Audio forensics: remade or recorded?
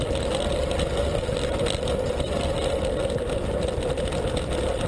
recorded